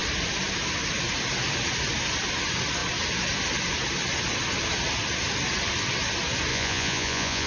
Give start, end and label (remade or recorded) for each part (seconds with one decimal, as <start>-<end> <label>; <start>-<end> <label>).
0.0-6.5 recorded; 6.5-7.5 remade